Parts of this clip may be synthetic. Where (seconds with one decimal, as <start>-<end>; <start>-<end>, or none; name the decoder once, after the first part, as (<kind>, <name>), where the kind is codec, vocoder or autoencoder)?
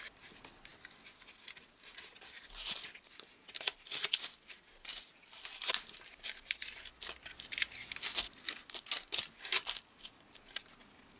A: none